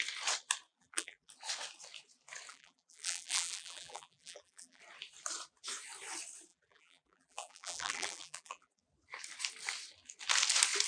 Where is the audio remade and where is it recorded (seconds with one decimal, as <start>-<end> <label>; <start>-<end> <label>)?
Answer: 0.0-0.7 recorded; 0.7-1.3 remade; 1.3-2.5 recorded; 2.5-4.8 remade; 4.8-6.5 recorded; 6.5-8.8 remade; 8.8-10.9 recorded